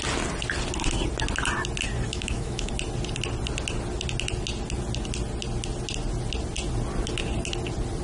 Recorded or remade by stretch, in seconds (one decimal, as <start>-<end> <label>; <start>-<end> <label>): 0.0-2.1 recorded; 2.1-2.7 remade; 2.7-8.0 recorded